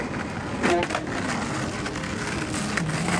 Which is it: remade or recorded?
recorded